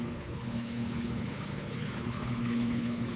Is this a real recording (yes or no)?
no